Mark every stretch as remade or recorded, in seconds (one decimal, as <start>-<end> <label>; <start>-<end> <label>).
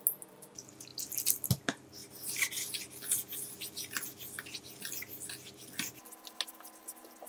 0.0-7.3 recorded